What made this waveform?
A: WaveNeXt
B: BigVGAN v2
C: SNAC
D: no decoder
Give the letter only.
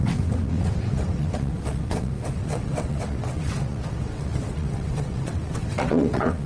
A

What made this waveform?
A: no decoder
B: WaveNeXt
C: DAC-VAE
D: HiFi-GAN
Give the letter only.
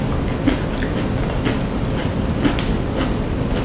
A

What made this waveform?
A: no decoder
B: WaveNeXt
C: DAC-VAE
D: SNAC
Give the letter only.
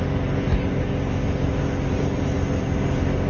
A